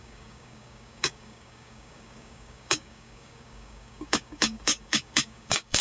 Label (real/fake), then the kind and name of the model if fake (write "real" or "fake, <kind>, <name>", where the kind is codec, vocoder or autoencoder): fake, codec, DAC